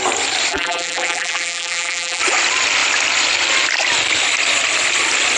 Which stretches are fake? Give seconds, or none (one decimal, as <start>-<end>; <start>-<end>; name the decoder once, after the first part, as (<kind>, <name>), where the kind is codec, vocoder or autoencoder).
0.5-2.2 (vocoder, BigVGAN v2)